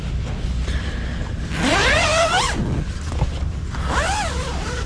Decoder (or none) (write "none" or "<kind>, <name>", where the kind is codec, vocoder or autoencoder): none